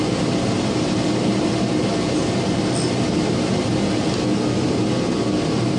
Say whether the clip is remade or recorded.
recorded